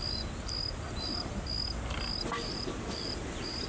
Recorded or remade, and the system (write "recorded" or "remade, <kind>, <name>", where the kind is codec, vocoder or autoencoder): recorded